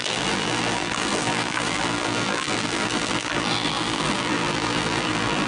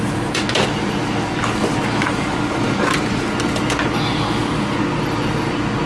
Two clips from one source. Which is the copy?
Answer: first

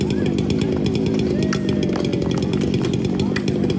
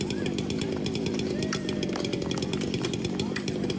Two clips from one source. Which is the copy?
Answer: second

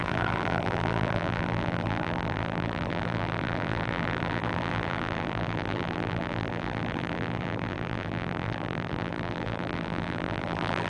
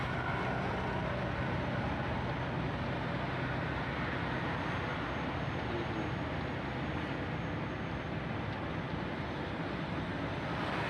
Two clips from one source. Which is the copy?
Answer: first